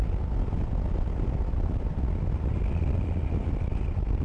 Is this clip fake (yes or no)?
no